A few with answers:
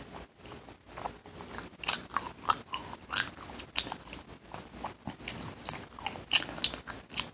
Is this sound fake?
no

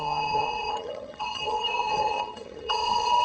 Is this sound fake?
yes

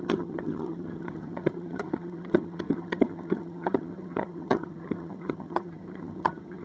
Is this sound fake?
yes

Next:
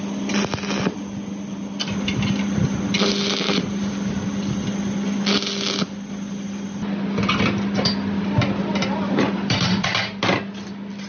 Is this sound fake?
no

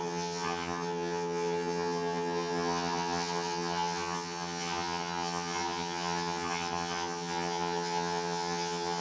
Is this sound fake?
yes